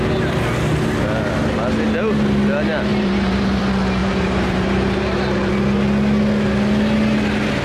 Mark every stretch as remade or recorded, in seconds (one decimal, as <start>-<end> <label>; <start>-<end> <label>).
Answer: 0.0-2.9 recorded; 2.9-3.6 remade; 3.6-4.0 recorded; 4.0-5.5 remade; 5.5-7.6 recorded